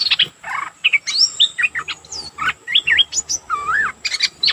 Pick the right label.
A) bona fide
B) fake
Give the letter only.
A